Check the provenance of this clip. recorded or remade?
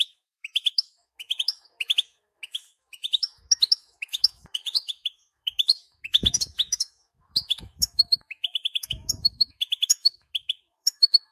remade